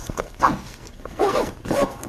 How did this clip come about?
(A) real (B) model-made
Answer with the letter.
B